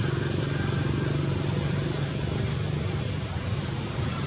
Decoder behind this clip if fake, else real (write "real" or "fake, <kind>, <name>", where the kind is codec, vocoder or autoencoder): real